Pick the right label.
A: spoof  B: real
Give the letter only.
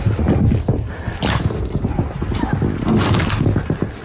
B